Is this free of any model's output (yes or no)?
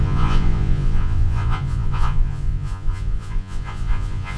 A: no